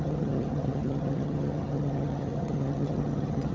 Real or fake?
fake